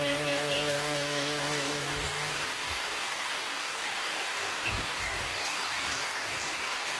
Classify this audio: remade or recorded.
remade